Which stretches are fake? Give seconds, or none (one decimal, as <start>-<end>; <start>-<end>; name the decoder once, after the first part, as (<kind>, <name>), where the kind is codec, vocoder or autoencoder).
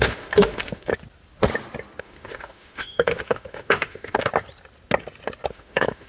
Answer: 0.0-0.9 (autoencoder, DAC-VAE); 2.0-4.3; 5.5-6.1